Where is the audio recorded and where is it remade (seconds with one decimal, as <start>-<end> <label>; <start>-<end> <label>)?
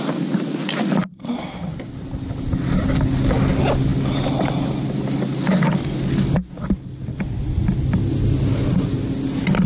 0.0-9.7 recorded